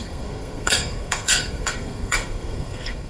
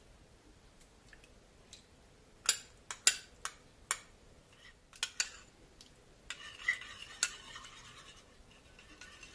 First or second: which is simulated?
first